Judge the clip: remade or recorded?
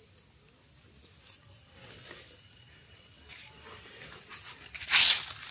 recorded